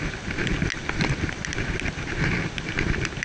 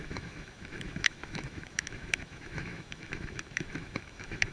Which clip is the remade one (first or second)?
second